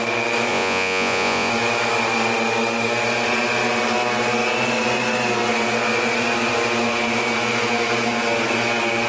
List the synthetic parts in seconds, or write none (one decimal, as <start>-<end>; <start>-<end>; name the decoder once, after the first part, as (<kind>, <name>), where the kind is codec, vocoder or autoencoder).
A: 0.5-1.5 (vocoder, Vocos)